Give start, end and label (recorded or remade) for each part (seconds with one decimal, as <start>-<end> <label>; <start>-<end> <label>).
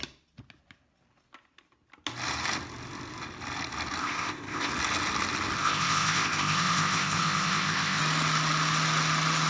0.0-4.0 recorded; 4.0-4.7 remade; 4.7-5.6 recorded; 5.6-8.0 remade; 8.0-9.5 recorded